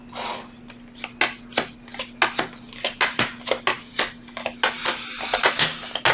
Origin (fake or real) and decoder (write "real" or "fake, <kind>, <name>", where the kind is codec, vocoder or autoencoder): real